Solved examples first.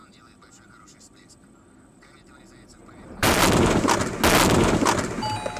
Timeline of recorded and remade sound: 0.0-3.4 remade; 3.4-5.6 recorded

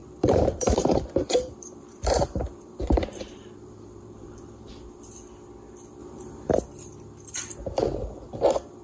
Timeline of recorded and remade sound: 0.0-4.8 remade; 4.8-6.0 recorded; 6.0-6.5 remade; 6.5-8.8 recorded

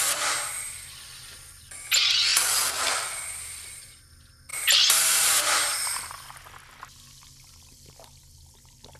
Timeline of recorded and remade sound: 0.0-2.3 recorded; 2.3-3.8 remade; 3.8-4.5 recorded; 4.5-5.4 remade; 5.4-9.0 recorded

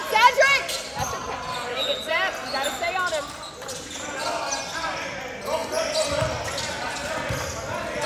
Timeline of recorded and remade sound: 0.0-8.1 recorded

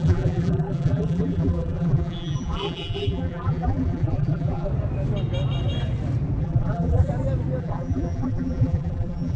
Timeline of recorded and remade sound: 0.0-4.7 remade; 4.7-6.4 recorded; 6.4-7.1 remade; 7.1-7.6 recorded; 7.6-9.4 remade

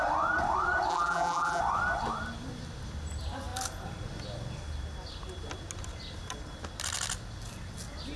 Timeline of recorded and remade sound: 0.0-0.9 recorded; 0.9-1.6 remade; 1.6-8.2 recorded

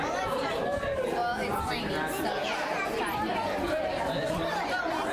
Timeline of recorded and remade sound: 0.0-1.2 remade; 1.2-1.8 recorded; 1.8-5.1 remade